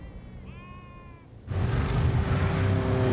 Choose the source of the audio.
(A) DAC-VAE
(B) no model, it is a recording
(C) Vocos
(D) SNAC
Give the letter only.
B